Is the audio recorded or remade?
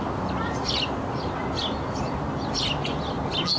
recorded